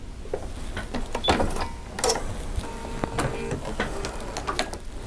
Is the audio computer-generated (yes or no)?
no